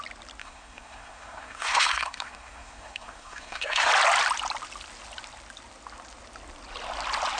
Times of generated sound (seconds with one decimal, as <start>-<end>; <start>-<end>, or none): 0.4-3.9